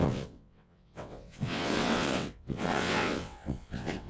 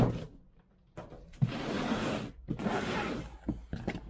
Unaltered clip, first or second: second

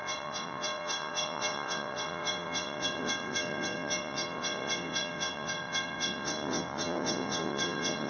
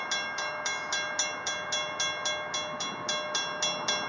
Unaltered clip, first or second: second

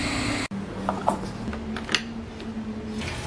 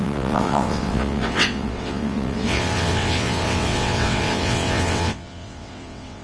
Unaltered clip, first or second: first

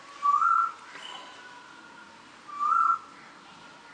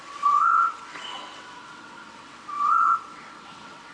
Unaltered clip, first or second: first